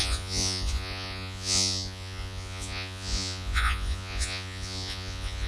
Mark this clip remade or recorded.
remade